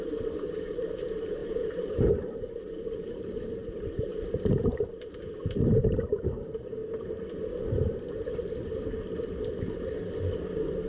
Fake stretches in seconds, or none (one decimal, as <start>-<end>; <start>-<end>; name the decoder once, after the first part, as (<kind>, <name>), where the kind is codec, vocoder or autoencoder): 0.0-6.8 (vocoder, BigVGAN v2); 10.5-10.9